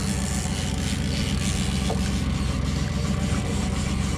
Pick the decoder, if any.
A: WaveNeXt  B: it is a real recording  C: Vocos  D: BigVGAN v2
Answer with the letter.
B